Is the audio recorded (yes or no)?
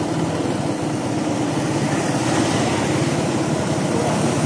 yes